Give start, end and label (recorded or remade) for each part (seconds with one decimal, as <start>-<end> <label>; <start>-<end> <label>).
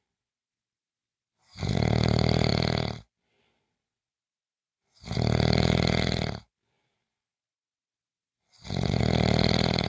0.0-2.5 remade; 2.5-3.6 recorded; 3.6-9.9 remade